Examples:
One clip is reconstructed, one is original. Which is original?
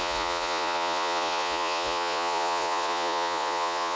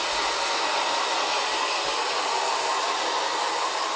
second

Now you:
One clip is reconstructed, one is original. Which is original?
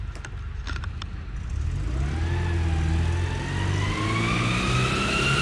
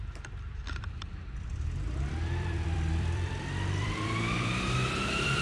first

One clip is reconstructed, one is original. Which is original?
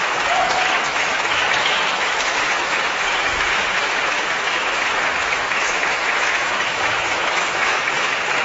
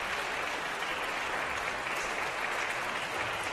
second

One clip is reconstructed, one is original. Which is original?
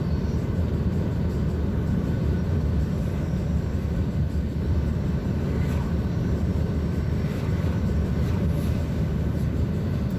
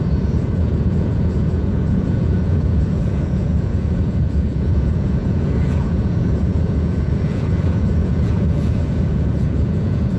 first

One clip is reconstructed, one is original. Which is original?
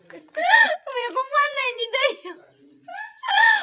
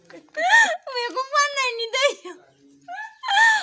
second